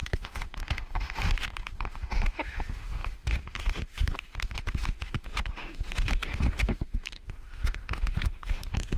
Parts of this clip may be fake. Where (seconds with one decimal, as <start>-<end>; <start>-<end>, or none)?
0.0-9.0